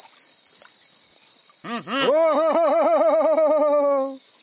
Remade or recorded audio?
recorded